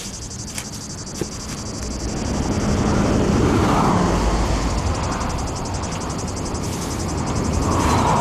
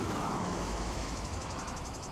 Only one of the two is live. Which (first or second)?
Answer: first